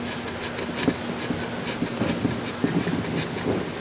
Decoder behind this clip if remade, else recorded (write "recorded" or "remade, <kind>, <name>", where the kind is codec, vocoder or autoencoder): recorded